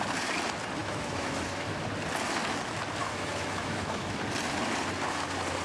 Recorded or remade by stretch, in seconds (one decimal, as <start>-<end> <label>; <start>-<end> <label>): 0.0-0.8 recorded; 0.8-1.8 remade; 1.8-3.0 recorded; 3.0-4.2 remade; 4.2-5.6 recorded